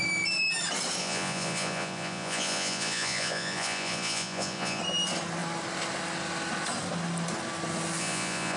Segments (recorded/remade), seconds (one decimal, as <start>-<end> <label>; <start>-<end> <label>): 0.0-1.0 recorded; 1.0-4.8 remade; 4.8-8.0 recorded; 8.0-8.6 remade

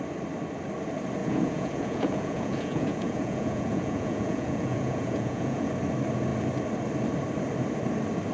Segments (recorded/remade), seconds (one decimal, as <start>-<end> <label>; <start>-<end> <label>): 0.0-1.2 recorded; 1.2-5.7 remade; 5.7-8.3 recorded